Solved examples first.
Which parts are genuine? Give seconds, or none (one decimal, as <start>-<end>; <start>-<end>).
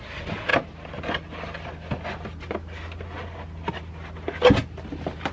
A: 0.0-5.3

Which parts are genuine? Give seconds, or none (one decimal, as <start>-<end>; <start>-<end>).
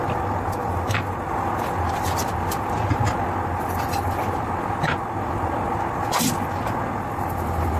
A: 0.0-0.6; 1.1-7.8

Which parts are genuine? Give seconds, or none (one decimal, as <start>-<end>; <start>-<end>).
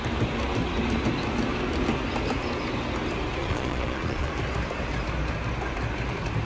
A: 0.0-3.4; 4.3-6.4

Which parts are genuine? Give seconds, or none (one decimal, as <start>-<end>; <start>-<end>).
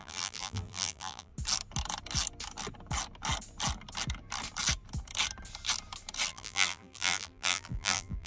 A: 1.3-6.3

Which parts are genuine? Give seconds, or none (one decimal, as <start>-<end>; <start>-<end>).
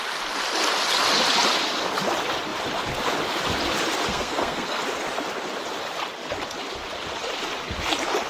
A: 0.0-4.1; 4.8-8.3